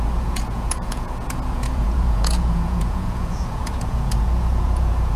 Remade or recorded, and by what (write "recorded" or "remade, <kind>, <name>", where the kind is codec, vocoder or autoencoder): remade, vocoder, Vocos